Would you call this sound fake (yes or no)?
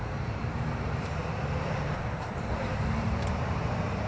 yes